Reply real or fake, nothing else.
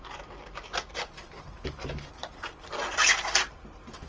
real